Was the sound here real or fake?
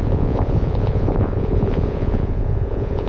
fake